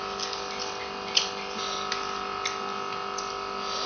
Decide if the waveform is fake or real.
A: real